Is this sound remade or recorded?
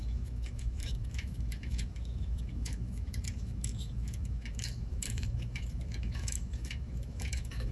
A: remade